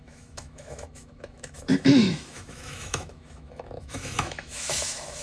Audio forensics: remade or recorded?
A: remade